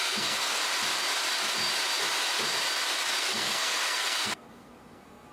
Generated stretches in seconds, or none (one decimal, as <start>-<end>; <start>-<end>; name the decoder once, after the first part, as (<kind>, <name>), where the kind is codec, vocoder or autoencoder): 0.0-0.6 (codec, SNAC); 3.2-5.3